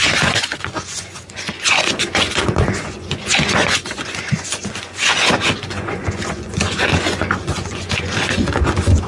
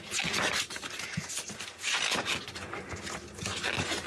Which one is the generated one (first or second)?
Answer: first